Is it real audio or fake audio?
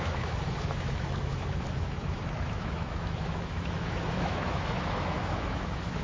fake